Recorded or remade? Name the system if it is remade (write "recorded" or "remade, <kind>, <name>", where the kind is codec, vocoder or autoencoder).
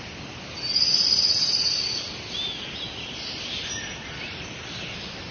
recorded